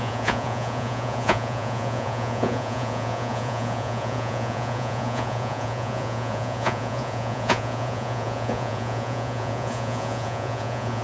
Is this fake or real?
fake